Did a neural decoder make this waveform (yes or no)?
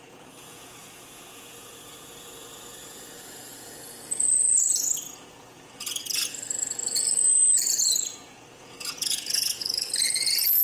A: yes